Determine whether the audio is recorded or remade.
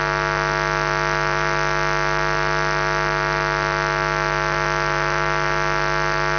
recorded